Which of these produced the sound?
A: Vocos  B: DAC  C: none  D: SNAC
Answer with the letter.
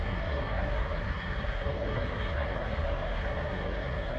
D